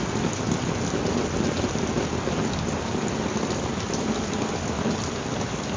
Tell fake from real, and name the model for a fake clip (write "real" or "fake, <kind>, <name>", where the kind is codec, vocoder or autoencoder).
real